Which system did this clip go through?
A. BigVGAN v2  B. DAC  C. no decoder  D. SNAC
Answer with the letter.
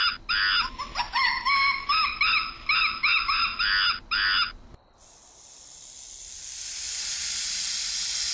C